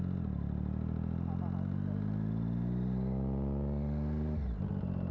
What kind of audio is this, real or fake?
real